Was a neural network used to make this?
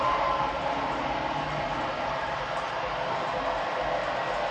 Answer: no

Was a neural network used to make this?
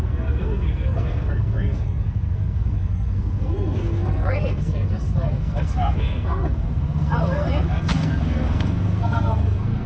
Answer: yes